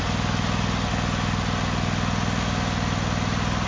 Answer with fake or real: real